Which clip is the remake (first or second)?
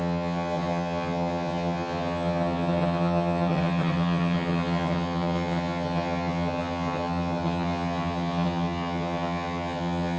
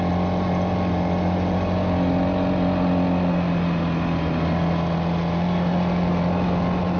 first